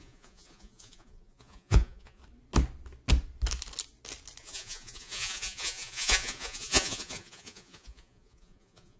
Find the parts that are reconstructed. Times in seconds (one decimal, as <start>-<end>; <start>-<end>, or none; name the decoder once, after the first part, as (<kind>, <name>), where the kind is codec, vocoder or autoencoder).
0.0-2.2 (vocoder, Vocos); 4.4-9.0